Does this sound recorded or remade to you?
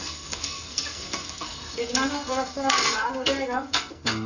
remade